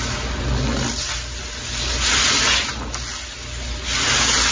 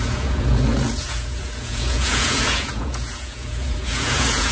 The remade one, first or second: second